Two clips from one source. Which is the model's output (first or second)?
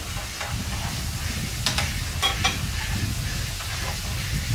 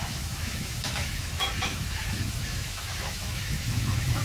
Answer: second